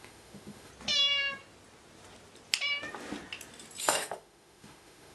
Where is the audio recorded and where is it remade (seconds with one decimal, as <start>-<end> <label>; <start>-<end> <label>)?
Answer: 0.0-0.7 remade; 0.7-3.8 recorded; 3.8-5.1 remade